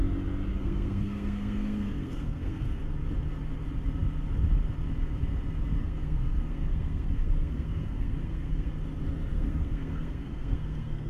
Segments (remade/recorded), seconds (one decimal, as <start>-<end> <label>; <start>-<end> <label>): 0.0-0.5 recorded; 0.5-2.8 remade; 2.8-5.8 recorded; 5.8-8.7 remade; 8.7-9.3 recorded; 9.3-11.1 remade